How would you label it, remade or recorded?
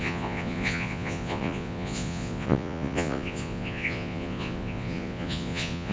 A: remade